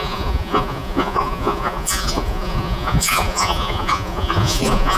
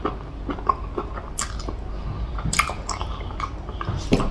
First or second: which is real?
second